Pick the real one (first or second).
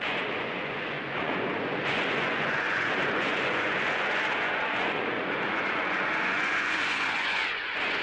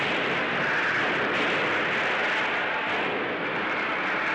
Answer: second